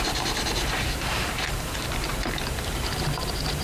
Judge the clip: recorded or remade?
remade